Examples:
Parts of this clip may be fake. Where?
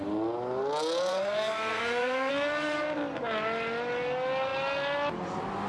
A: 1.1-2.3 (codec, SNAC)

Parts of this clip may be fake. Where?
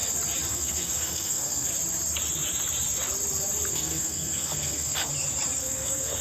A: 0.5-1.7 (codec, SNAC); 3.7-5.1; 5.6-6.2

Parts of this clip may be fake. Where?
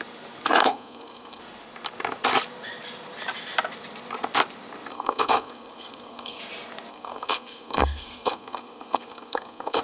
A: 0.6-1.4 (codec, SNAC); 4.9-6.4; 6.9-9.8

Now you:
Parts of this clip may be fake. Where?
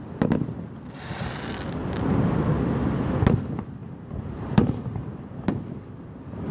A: 3.8-5.6 (vocoder, BigVGAN v2)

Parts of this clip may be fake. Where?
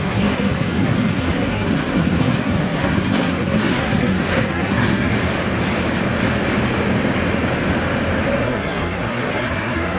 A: 0.0-5.1 (codec, SNAC); 8.4-10.0